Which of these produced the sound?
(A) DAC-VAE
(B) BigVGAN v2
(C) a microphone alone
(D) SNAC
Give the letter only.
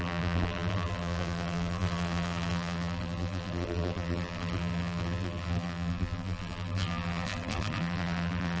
B